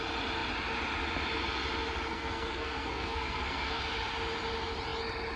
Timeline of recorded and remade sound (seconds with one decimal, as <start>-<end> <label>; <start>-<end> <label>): 0.0-2.1 recorded; 2.1-3.8 remade; 3.8-5.4 recorded